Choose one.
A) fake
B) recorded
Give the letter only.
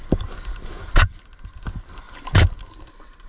B